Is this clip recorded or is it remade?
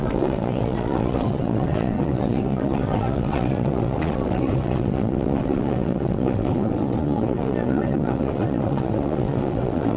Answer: remade